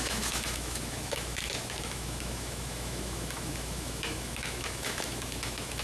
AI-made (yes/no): yes